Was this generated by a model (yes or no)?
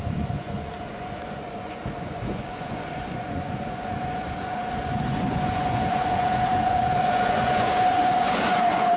yes